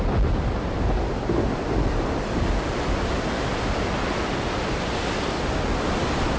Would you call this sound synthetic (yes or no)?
no